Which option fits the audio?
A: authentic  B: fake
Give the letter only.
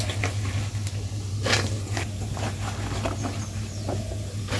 A